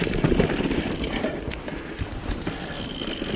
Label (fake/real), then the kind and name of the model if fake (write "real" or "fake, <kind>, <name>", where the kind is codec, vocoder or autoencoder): real